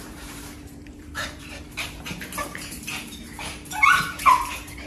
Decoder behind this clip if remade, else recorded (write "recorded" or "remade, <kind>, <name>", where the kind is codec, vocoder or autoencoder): remade, vocoder, BigVGAN v2